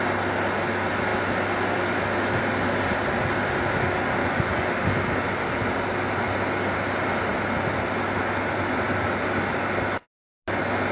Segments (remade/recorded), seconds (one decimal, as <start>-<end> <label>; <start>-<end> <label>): 0.0-4.2 recorded; 4.2-4.7 remade; 4.7-10.9 recorded